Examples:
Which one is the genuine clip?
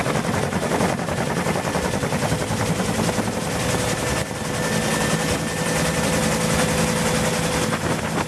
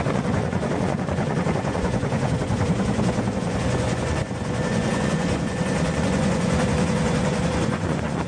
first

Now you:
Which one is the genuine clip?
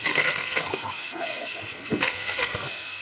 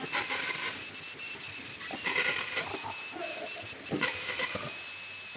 second